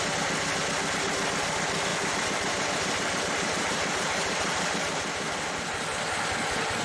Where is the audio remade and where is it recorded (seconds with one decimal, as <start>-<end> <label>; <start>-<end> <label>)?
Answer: 0.0-1.9 recorded; 1.9-5.6 remade; 5.6-6.8 recorded